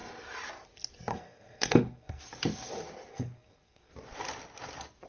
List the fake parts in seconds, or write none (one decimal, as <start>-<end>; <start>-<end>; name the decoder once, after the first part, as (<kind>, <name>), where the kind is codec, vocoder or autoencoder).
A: 1.1-2.2 (codec, SNAC); 3.1-3.9